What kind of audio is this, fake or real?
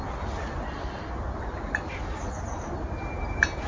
real